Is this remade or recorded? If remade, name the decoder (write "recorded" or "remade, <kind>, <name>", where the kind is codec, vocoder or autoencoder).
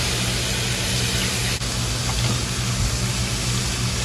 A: recorded